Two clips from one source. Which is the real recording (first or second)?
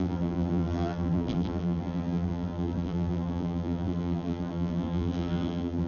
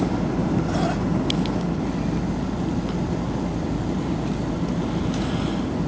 second